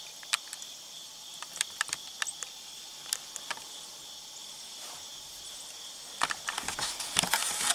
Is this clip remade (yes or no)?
no